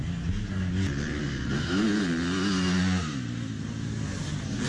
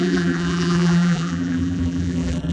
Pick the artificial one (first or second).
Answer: second